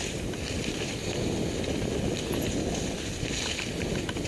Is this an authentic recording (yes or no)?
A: yes